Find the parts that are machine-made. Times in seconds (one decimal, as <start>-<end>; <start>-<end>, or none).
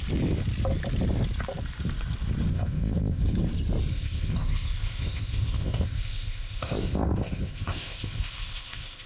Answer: 2.5-3.2; 3.9-9.1